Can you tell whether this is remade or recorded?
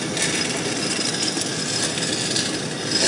recorded